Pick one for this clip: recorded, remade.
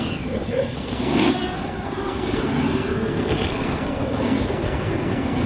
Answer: remade